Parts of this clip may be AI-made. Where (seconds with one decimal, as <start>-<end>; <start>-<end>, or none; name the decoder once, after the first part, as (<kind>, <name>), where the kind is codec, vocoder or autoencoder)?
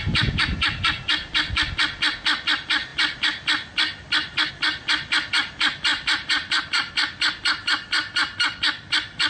5.9-6.6 (vocoder, BigVGAN v2)